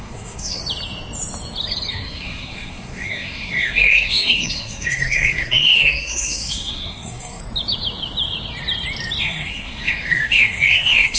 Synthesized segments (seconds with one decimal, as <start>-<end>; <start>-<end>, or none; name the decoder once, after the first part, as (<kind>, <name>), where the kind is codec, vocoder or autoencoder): 0.0-0.6 (codec, SNAC); 1.9-7.4; 9.2-11.2